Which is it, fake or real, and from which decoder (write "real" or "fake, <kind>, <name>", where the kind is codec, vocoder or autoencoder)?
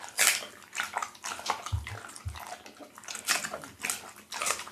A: real